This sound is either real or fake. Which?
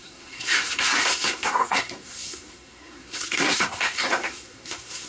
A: fake